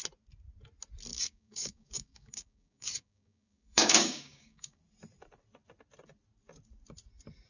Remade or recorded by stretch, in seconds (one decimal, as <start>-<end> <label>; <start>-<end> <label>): 0.0-1.1 recorded; 1.1-4.8 remade; 4.8-7.5 recorded